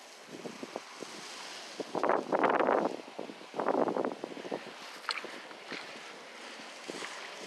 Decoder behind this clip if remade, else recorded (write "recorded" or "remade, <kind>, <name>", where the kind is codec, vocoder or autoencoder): recorded